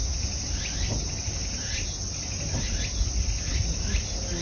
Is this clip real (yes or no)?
yes